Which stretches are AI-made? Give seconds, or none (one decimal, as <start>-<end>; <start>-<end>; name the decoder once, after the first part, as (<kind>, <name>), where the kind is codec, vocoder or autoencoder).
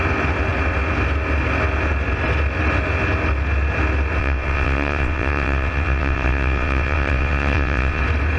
4.2-8.0 (vocoder, WaveNeXt)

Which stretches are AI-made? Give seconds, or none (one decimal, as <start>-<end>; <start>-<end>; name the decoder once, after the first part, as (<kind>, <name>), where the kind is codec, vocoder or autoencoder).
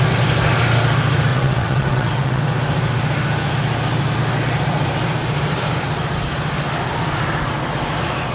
1.3-2.4 (vocoder, WaveNeXt)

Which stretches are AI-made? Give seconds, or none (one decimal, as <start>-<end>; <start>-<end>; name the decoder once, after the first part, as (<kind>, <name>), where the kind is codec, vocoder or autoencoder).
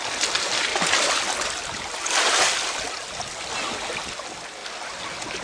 none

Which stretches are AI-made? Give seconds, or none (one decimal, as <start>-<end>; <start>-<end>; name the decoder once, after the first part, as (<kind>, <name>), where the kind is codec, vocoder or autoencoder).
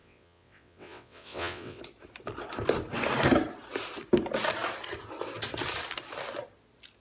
0.0-1.8 (vocoder, WaveNeXt)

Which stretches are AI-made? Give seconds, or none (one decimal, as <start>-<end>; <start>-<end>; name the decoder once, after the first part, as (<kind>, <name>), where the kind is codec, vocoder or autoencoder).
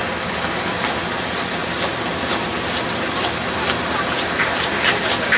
none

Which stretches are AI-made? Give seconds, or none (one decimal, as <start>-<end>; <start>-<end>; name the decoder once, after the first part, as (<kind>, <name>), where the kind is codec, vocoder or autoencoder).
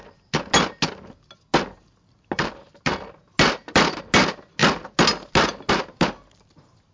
none